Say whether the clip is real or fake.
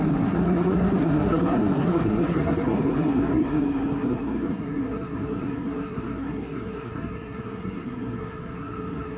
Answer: fake